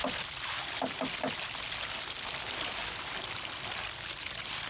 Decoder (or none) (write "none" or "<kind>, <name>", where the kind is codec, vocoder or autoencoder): none